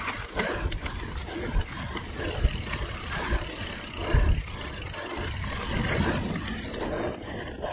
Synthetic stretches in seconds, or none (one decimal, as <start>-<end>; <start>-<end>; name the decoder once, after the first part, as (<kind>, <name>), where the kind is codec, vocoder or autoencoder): 0.0-1.2 (vocoder, BigVGAN v2); 2.9-4.0; 6.5-7.7